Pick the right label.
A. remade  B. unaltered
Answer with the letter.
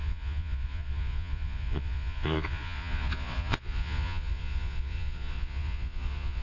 A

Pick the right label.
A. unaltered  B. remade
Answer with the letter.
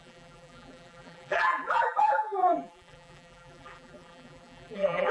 B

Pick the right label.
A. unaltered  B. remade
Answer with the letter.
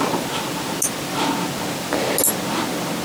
A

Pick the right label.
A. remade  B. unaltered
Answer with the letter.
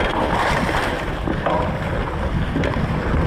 B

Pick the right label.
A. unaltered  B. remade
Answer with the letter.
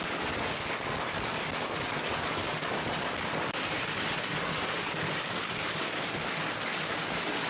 B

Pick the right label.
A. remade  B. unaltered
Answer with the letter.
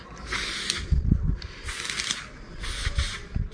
B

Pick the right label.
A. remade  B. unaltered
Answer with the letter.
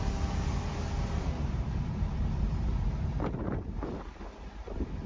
A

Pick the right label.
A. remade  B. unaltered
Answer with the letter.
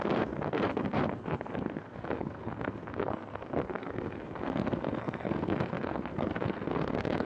A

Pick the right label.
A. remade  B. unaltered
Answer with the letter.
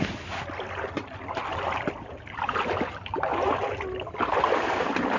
B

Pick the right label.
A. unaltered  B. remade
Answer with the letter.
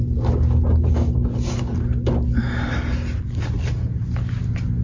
A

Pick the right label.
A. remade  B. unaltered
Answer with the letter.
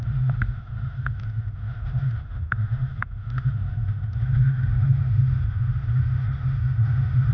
A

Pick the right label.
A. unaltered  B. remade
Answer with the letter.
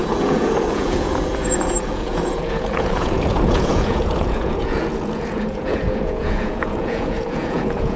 B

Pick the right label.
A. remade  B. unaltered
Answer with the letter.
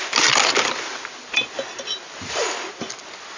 B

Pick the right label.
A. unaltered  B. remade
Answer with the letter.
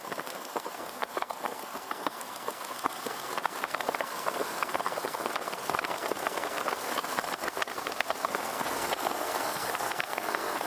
B